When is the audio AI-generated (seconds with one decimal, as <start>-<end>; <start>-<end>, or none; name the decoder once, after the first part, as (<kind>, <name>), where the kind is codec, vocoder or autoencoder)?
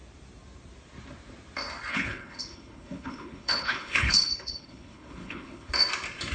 1.9-5.7 (codec, HILCodec)